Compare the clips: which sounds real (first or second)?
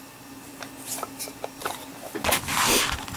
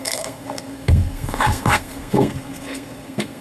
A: first